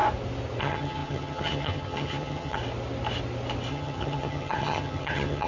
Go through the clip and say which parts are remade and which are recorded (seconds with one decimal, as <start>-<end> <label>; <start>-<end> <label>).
0.0-0.6 recorded; 0.6-2.6 remade; 2.6-3.7 recorded; 3.7-5.5 remade